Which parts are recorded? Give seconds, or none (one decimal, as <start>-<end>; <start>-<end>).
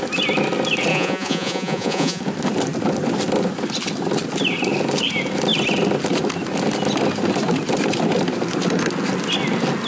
0.0-0.9; 2.2-9.9